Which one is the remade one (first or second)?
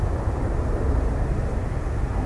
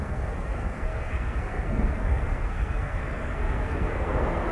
second